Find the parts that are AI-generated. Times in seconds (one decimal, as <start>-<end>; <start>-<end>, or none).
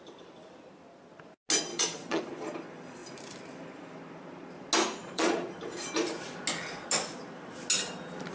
1.7-2.2; 5.0-5.6